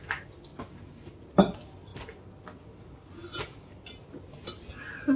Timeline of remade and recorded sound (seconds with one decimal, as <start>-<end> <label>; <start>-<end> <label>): 0.0-5.2 recorded